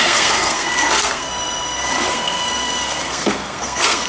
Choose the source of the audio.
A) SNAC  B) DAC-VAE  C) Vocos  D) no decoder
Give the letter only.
A